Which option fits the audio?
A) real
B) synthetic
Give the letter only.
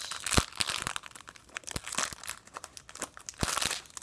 A